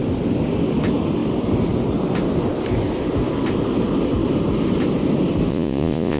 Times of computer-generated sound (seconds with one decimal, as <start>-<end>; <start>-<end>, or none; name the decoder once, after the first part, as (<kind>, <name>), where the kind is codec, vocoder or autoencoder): 5.5-6.2 (vocoder, Vocos)